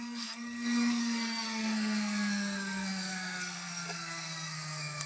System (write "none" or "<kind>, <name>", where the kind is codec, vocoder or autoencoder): codec, SNAC